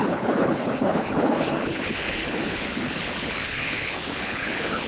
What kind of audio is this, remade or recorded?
remade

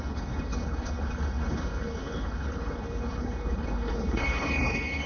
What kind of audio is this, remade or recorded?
remade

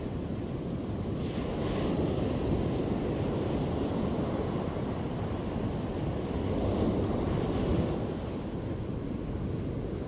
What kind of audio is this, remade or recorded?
recorded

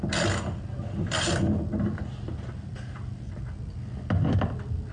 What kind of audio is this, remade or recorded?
recorded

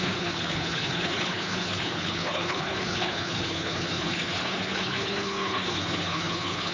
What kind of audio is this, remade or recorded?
remade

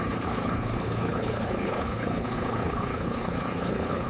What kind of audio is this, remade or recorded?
remade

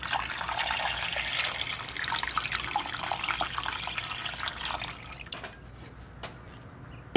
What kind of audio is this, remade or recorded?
recorded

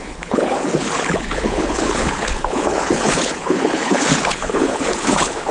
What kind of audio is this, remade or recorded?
remade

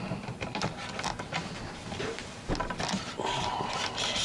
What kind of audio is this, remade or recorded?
recorded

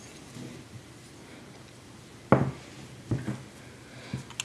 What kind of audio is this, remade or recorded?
recorded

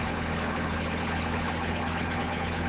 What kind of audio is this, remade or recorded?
remade